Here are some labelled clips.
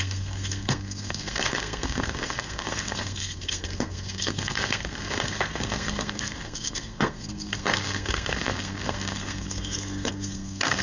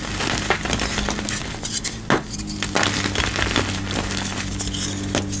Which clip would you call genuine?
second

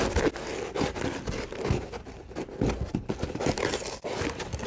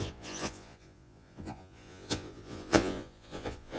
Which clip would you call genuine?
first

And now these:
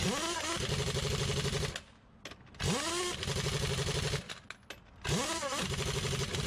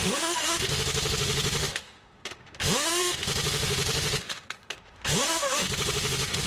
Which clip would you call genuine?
first